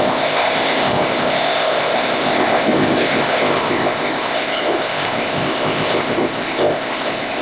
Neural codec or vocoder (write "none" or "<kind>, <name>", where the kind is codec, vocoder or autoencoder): codec, ZipCodec